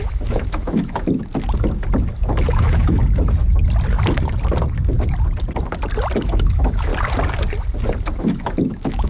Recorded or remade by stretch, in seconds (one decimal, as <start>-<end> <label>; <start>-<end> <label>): 0.0-1.3 remade; 1.3-2.5 recorded; 2.5-3.0 remade; 3.0-6.2 recorded; 6.2-6.9 remade; 6.9-8.2 recorded; 8.2-9.1 remade